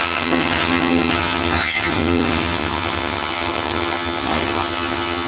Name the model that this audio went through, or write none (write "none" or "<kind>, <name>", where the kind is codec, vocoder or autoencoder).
vocoder, HiFi-GAN